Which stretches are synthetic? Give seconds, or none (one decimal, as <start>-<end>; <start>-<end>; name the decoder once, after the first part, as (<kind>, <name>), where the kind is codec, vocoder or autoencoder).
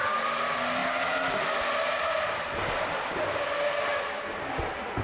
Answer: none